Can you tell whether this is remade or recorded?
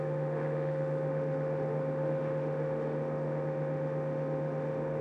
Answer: remade